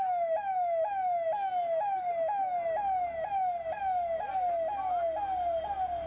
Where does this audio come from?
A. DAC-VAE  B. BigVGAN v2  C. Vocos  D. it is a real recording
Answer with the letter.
D